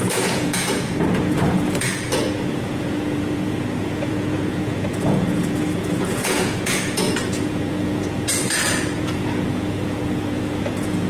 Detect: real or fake fake